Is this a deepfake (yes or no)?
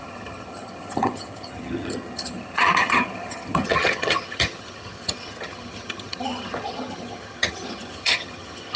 yes